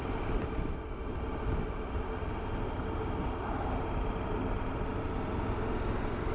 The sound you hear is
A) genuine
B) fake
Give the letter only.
A